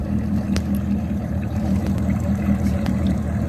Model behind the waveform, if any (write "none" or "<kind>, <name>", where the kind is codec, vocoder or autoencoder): vocoder, BigVGAN v2